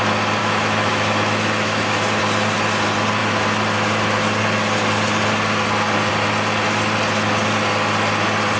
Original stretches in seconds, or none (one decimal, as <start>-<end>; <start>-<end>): 0.0-0.4; 2.2-8.6